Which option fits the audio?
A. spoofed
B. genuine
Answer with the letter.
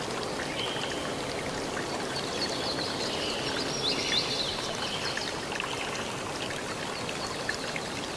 B